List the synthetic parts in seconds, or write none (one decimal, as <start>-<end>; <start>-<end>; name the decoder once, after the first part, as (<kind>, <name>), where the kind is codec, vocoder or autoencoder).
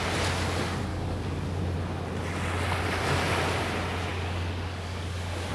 0.9-1.6 (codec, DAC); 4.1-5.5